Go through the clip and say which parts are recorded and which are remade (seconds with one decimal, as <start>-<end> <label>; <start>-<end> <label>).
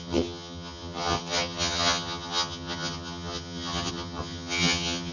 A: 0.0-5.1 remade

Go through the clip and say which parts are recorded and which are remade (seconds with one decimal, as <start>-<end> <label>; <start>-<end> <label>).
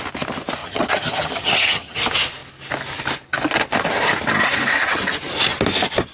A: 0.0-0.6 recorded; 0.6-2.0 remade; 2.0-6.1 recorded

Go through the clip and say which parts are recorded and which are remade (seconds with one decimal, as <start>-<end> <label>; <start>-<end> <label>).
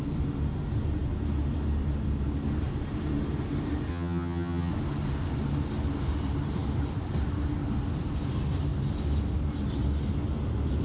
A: 0.0-3.9 recorded; 3.9-4.7 remade; 4.7-10.8 recorded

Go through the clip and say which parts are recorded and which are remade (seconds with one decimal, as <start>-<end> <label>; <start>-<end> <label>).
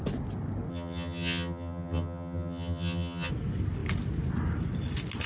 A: 0.0-0.7 recorded; 0.7-3.3 remade; 3.3-5.3 recorded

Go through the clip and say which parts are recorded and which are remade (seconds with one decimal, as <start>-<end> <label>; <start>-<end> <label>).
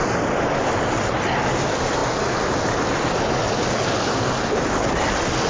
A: 0.0-5.5 recorded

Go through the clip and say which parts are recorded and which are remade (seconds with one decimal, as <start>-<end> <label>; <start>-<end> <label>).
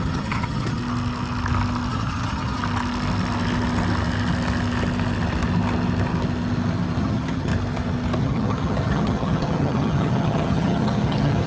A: 0.0-0.8 remade; 0.8-1.9 recorded; 1.9-2.6 remade; 2.6-7.0 recorded; 7.0-7.5 remade; 7.5-8.2 recorded; 8.2-11.5 remade